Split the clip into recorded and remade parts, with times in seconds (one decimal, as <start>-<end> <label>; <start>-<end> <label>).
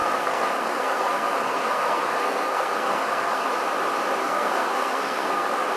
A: 0.0-3.5 remade; 3.5-4.2 recorded; 4.2-5.8 remade